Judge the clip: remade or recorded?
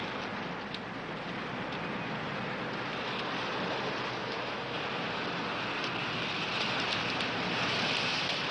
recorded